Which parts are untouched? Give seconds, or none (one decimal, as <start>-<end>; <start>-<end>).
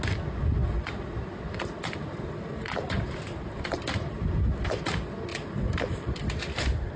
0.0-2.1; 4.5-5.3